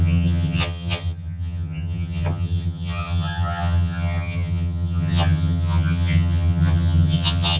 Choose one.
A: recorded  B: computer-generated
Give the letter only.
B